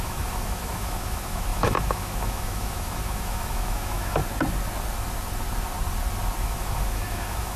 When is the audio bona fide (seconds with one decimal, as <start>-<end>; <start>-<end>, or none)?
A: 4.2-6.4